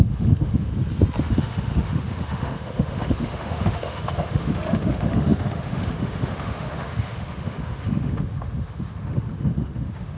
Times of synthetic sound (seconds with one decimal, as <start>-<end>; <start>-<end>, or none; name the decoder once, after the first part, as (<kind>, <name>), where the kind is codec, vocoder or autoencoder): 0.0-0.7 (autoencoder, DAC-VAE); 1.2-10.2